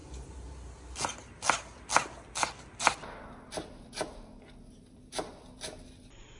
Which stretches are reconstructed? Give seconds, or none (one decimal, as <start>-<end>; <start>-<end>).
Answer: none